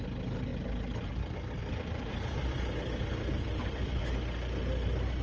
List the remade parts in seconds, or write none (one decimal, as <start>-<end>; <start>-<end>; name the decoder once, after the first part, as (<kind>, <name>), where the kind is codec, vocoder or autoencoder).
0.5-1.1 (vocoder, BigVGAN v2); 1.6-4.0